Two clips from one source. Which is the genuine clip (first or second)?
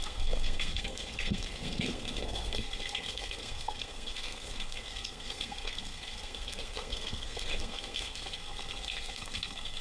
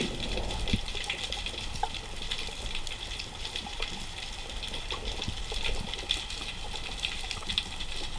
second